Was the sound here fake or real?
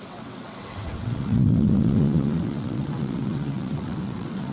fake